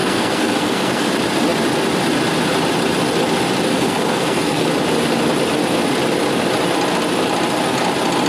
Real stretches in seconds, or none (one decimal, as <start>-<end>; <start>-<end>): 1.1-3.7; 4.7-8.3